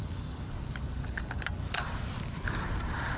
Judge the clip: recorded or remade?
remade